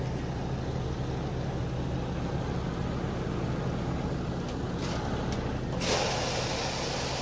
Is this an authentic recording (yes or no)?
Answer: yes